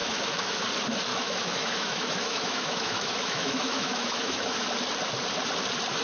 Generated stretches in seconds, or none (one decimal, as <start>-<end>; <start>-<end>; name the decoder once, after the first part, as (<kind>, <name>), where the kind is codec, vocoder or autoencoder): 0.0-0.6 (autoencoder, DAC-VAE); 1.1-4.7